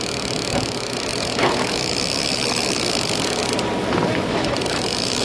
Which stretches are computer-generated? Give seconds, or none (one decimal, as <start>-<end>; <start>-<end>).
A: 0.0-3.4; 4.3-5.2